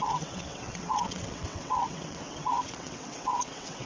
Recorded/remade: remade